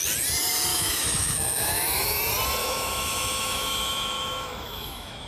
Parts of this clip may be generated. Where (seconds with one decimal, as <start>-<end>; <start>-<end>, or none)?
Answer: 0.7-2.2; 2.6-5.3

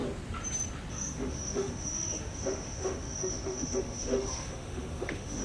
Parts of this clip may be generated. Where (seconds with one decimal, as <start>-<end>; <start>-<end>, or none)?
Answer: 0.9-5.4

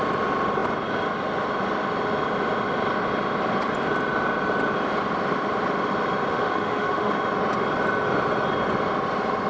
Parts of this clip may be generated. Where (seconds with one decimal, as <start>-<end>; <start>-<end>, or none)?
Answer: 6.3-7.1

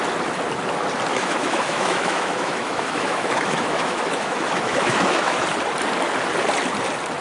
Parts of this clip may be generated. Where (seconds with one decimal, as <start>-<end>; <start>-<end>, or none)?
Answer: 1.1-5.4

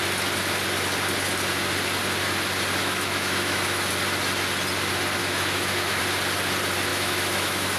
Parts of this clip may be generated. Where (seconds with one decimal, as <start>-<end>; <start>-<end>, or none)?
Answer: 2.8-3.9; 5.2-6.0; 6.9-7.8

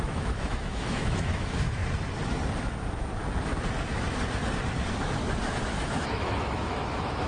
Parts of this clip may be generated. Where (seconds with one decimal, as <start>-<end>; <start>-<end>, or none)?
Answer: 0.0-1.8; 2.6-3.2; 5.6-7.3